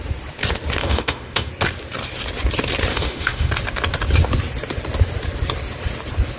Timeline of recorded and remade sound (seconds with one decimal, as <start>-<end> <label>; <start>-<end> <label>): 0.0-0.8 recorded; 0.8-1.5 remade; 1.5-2.9 recorded; 2.9-3.5 remade; 3.5-6.4 recorded